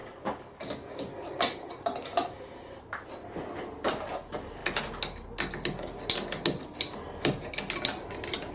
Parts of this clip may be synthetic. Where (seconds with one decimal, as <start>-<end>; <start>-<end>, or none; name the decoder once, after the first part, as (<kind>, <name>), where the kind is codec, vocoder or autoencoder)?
none